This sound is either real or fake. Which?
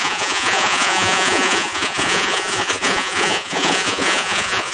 fake